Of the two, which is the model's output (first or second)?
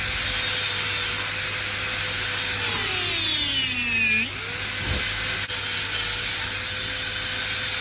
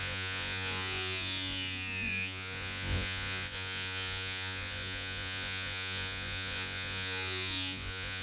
second